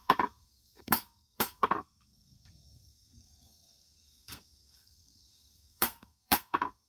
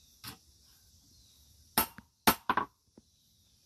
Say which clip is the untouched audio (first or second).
second